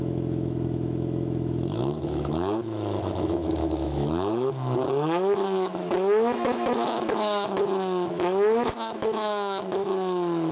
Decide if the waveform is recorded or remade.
remade